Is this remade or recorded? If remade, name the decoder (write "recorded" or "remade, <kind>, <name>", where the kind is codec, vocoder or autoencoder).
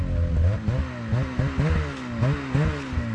recorded